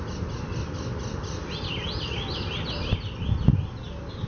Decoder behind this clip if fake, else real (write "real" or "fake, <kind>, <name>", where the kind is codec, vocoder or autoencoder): real